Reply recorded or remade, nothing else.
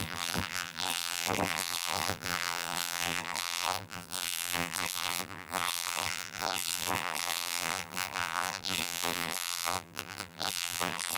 remade